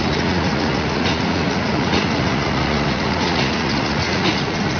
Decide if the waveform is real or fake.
fake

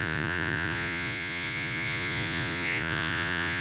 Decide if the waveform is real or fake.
fake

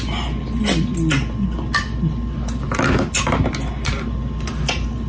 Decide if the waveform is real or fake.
real